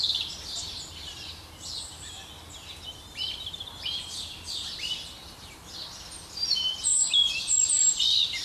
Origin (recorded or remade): recorded